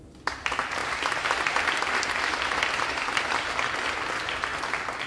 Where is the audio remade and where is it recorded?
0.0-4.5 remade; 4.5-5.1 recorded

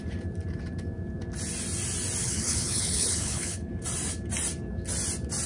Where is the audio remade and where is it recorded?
0.0-2.2 recorded; 2.2-3.7 remade; 3.7-5.5 recorded